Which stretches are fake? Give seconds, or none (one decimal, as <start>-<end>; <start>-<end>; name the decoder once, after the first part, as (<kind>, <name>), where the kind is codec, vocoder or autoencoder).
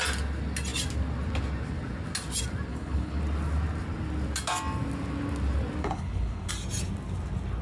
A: 2.7-3.2 (codec, HILCodec); 5.8-6.5